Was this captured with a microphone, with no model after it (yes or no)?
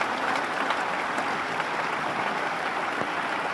yes